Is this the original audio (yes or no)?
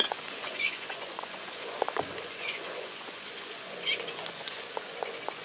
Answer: no